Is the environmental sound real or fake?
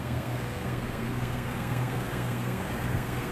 fake